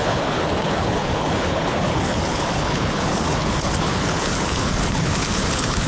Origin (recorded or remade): remade